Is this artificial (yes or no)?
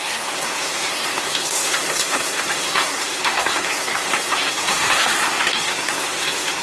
yes